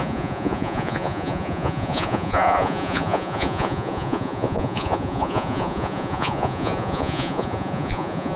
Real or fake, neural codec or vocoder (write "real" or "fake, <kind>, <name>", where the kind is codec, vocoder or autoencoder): fake, vocoder, Vocos